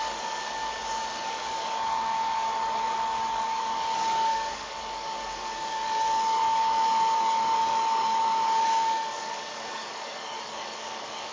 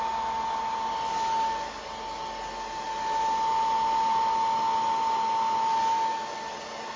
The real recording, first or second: second